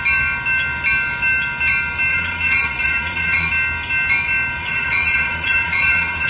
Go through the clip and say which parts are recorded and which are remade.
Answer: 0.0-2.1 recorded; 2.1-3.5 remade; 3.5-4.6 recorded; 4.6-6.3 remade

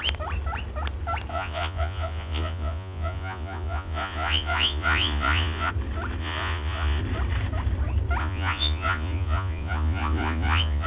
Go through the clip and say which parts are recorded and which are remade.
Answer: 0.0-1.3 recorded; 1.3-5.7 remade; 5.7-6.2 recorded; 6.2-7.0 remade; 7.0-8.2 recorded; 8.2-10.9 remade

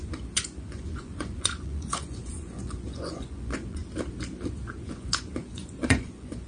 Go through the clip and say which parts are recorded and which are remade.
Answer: 0.0-3.8 remade; 3.8-4.8 recorded; 4.8-6.5 remade

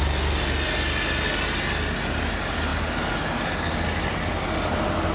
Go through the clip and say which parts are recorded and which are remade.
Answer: 0.0-5.1 recorded

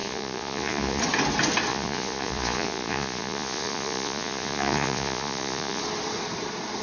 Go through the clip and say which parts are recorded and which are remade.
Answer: 0.0-1.0 remade; 1.0-1.7 recorded; 1.7-5.8 remade; 5.8-6.8 recorded

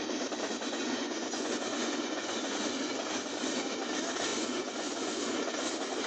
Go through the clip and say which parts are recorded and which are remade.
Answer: 0.0-0.5 recorded; 0.5-2.8 remade; 2.8-4.3 recorded; 4.3-5.4 remade; 5.4-6.1 recorded

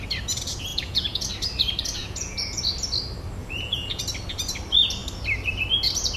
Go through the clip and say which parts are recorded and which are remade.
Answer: 0.0-0.7 recorded; 0.7-1.3 remade; 1.3-2.0 recorded; 2.0-2.6 remade; 2.6-3.4 recorded; 3.4-4.0 remade; 4.0-6.2 recorded

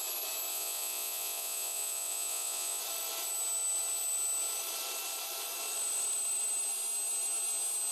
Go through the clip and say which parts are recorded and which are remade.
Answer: 0.0-0.5 recorded; 0.5-2.8 remade; 2.8-7.9 recorded